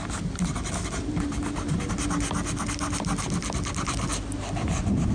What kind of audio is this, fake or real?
real